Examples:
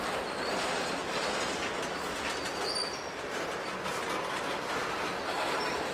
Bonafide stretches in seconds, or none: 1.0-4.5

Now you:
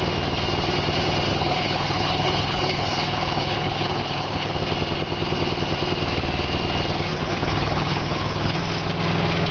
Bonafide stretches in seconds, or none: 0.0-1.3; 4.6-7.1; 8.6-9.5

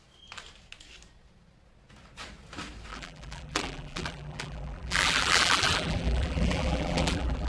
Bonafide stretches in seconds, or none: 0.0-2.9

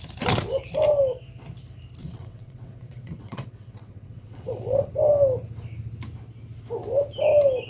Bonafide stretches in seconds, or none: 0.0-2.0; 4.9-7.7

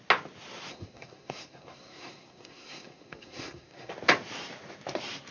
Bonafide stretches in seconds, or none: 0.0-0.7; 3.9-5.3